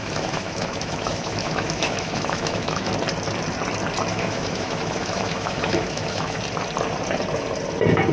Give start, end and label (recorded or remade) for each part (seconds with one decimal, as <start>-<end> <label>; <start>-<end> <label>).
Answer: 0.0-2.9 remade; 2.9-4.1 recorded; 4.1-6.4 remade; 6.4-8.1 recorded